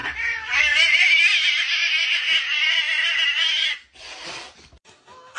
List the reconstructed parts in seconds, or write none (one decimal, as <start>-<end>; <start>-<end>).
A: none